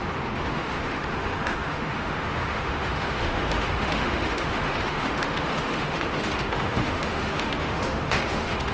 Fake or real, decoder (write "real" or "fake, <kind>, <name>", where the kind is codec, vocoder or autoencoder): fake, autoencoder, DAC-VAE